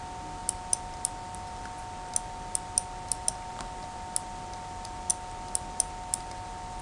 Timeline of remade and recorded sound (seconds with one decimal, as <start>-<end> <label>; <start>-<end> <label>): 0.0-6.8 recorded